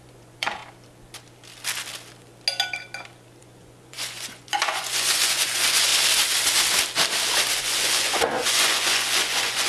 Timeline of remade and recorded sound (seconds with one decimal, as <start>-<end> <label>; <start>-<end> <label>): 0.0-0.6 remade; 0.6-3.4 recorded; 3.4-5.9 remade; 5.9-7.6 recorded; 7.6-9.7 remade